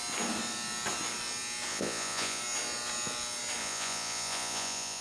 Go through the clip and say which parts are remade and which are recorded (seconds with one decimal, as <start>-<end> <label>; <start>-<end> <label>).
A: 0.0-1.7 recorded; 1.7-2.4 remade; 2.4-3.6 recorded; 3.6-5.0 remade